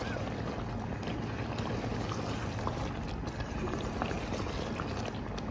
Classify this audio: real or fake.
real